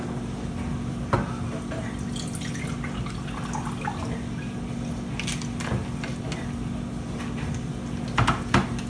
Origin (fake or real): real